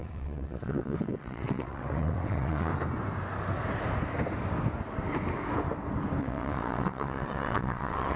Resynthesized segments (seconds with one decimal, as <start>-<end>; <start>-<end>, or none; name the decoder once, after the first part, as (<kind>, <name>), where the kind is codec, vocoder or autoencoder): 0.0-2.7 (vocoder, WaveNeXt); 6.2-8.2